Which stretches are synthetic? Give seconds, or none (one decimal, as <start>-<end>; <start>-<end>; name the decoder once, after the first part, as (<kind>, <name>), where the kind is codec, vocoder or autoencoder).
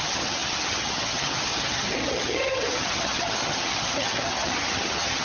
0.0-5.2 (vocoder, HiFi-GAN)